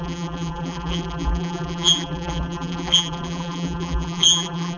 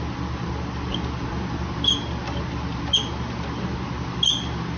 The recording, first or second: second